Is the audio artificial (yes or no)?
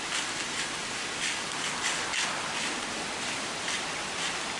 no